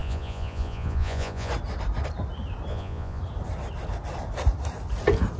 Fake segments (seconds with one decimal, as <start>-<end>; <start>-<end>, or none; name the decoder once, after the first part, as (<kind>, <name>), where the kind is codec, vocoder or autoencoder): 0.0-1.5 (vocoder, Vocos); 2.7-3.2